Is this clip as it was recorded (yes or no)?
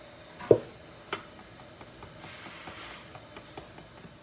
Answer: yes